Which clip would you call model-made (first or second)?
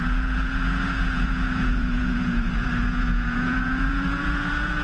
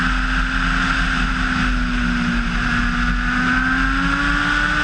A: first